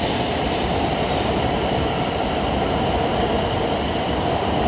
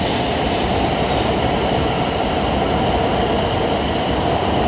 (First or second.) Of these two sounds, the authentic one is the second